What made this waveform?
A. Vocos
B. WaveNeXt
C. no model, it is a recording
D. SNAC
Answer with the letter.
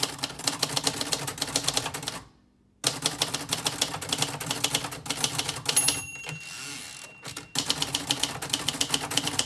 C